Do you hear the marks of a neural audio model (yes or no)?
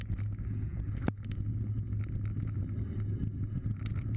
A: no